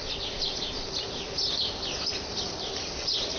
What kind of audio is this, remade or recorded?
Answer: recorded